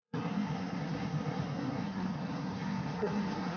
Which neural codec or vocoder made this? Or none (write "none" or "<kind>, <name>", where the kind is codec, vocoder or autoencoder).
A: codec, SNAC